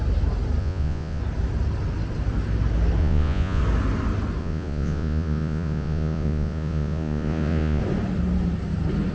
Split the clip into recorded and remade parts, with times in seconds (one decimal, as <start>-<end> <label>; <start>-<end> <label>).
0.0-0.6 recorded; 0.6-1.2 remade; 1.2-3.0 recorded; 3.0-3.6 remade; 3.6-4.4 recorded; 4.4-7.8 remade; 7.8-9.1 recorded